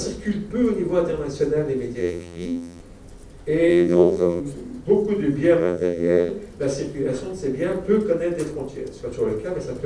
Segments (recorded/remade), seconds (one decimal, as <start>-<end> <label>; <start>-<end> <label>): 0.0-2.0 recorded; 2.0-2.8 remade; 2.8-3.7 recorded; 3.7-4.4 remade; 4.4-5.6 recorded; 5.6-6.3 remade; 6.3-9.9 recorded